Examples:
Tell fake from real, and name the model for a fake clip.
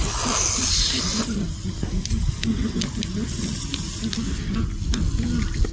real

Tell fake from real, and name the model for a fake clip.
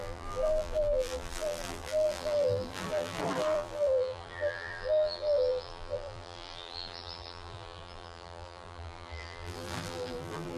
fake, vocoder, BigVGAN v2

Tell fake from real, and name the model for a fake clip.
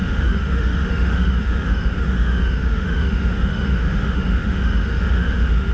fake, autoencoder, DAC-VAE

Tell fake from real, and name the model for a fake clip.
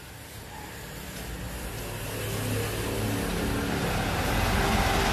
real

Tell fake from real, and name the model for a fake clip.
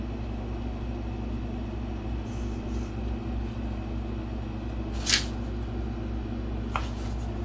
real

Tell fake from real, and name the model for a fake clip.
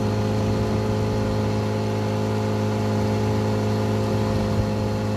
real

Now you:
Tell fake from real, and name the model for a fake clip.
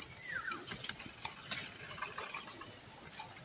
real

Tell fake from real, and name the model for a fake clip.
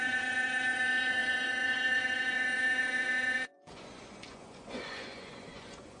fake, vocoder, Vocos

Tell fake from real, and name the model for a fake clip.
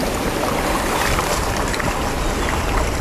real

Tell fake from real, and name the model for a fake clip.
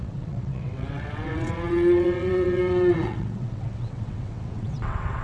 fake, vocoder, WaveNeXt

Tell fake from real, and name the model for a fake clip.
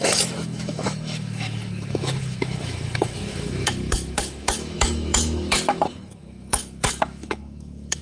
fake, autoencoder, DAC-VAE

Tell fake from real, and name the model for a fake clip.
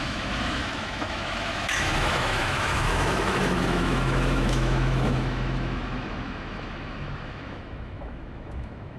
fake, autoencoder, DAC-VAE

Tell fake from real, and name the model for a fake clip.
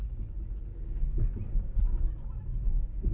real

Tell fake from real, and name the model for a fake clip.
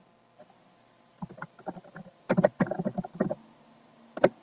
real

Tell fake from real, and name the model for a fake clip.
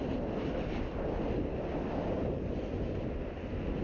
real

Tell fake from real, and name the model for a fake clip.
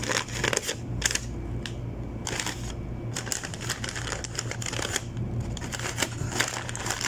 real